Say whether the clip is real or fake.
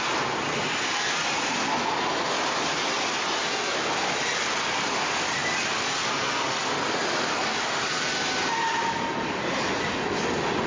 real